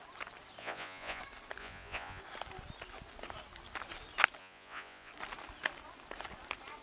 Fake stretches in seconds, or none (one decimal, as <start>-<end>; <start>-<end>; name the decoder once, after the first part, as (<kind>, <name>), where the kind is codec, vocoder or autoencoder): 0.6-1.2 (vocoder, Vocos); 1.6-2.2; 4.4-5.1